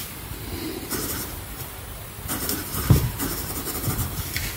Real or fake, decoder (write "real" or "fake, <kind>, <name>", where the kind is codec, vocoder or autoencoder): fake, vocoder, BigVGAN v2